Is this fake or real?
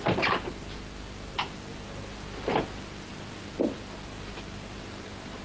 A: real